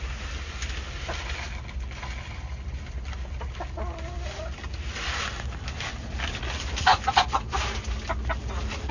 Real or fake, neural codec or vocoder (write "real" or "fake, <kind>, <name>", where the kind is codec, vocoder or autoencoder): real